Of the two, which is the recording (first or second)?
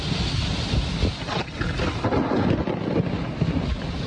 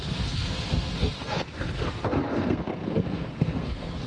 first